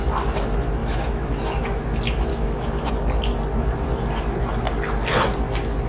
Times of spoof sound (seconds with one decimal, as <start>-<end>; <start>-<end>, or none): 0.8-1.8; 2.3-2.9